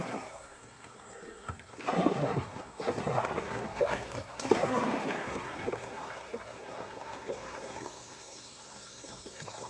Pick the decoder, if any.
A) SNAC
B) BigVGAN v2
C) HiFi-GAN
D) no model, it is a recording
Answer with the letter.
A